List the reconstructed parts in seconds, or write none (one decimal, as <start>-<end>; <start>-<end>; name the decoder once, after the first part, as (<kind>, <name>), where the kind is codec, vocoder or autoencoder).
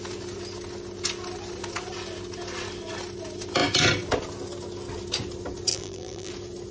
5.7-6.3 (vocoder, BigVGAN v2)